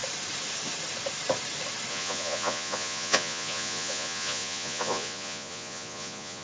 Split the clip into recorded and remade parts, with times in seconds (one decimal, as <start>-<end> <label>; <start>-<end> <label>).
0.0-1.9 recorded; 1.9-6.4 remade